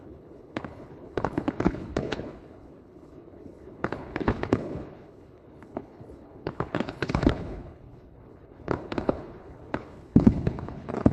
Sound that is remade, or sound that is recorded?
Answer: remade